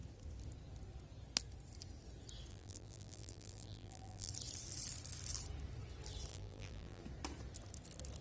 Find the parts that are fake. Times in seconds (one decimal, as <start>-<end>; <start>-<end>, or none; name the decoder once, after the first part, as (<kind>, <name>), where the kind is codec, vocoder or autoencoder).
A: 2.5-4.3 (vocoder, BigVGAN v2); 6.3-7.0